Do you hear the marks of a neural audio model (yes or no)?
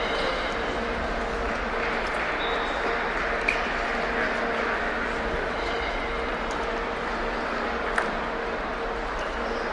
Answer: no